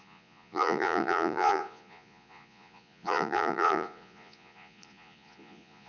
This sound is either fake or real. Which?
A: fake